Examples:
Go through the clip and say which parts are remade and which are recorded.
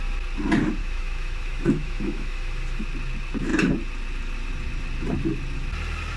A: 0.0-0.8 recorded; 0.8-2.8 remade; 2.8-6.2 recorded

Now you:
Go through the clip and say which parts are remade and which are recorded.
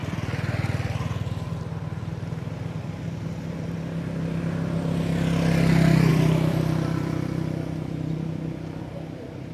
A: 0.0-1.6 remade; 1.6-6.1 recorded; 6.1-8.8 remade; 8.8-9.5 recorded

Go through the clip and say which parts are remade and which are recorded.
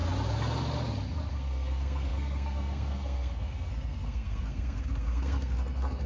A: 0.0-1.3 recorded; 1.3-6.1 remade